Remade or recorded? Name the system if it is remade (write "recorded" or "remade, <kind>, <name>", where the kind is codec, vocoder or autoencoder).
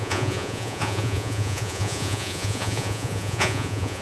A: remade, vocoder, Vocos